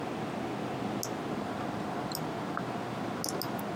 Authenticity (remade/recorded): recorded